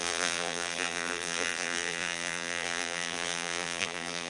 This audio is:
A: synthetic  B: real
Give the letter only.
A